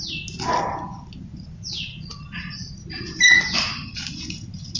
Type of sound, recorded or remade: recorded